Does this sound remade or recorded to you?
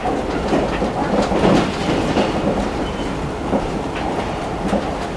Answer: recorded